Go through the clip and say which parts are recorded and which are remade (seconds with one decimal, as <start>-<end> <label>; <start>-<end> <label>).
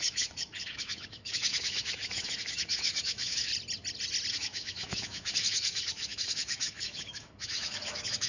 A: 0.0-3.5 remade; 3.5-4.3 recorded; 4.3-8.3 remade